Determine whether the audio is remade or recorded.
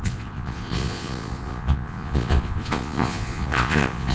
remade